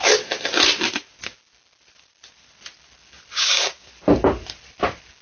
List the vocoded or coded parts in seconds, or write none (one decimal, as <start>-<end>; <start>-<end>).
3.3-3.9